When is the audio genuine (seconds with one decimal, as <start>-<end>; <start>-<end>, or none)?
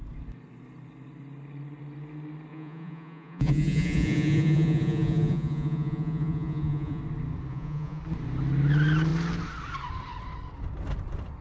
0.0-2.5; 7.0-7.5; 8.0-11.4